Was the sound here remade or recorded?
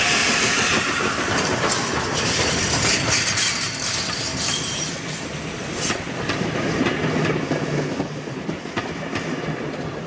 recorded